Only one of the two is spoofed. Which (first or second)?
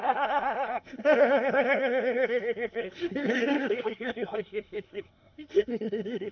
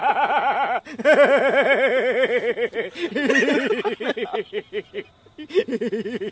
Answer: first